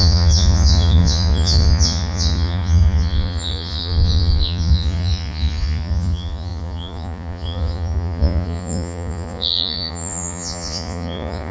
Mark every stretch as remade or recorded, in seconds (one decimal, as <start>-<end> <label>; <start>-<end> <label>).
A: 0.0-11.5 remade